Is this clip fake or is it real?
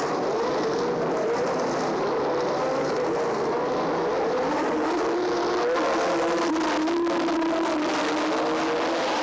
real